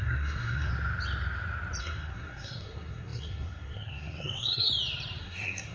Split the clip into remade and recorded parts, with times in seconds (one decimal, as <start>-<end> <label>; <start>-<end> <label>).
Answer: 0.0-0.7 remade; 0.7-1.8 recorded; 1.8-4.7 remade; 4.7-5.2 recorded; 5.2-5.7 remade